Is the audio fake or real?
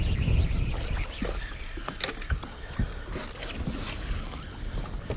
real